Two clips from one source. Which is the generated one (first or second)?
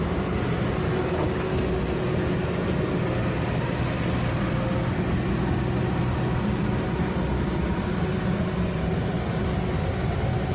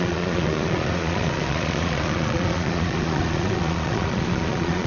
second